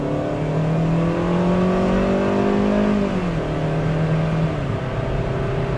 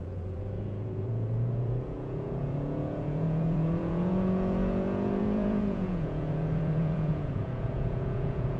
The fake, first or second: second